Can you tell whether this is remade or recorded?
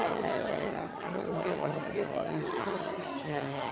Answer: remade